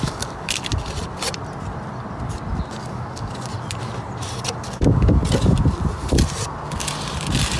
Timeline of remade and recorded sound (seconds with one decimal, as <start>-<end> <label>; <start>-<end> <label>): 0.0-0.7 remade; 0.7-2.7 recorded; 2.7-3.5 remade; 3.5-4.6 recorded; 4.6-5.2 remade; 5.2-7.6 recorded